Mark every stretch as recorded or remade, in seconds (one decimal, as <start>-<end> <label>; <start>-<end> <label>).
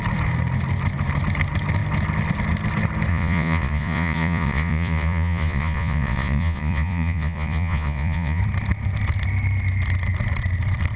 0.0-3.1 recorded; 3.1-8.4 remade; 8.4-11.0 recorded